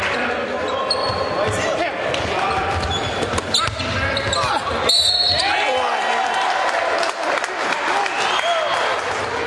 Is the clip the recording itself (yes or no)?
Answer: yes